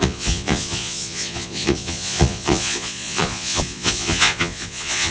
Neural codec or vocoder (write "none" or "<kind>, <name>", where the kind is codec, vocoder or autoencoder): vocoder, Vocos